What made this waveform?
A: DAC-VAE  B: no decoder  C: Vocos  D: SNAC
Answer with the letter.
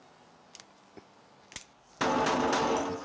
B